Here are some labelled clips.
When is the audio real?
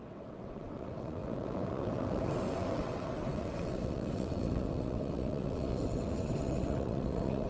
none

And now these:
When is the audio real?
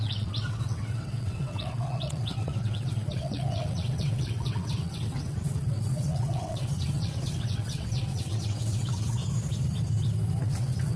9.2-10.4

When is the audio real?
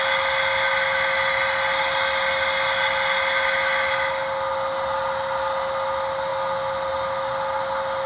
0.0-8.1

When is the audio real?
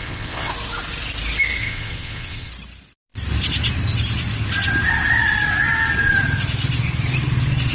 0.5-1.6; 2.5-7.7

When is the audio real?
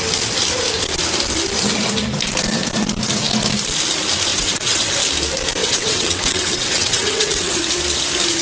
0.0-4.3; 4.9-5.6; 7.6-8.4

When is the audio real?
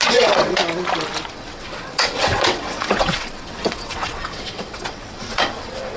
0.6-1.3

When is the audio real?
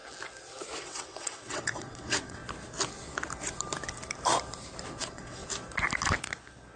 0.0-0.8; 2.4-5.0; 5.4-6.8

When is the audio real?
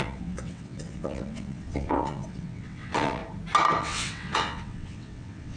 3.2-3.8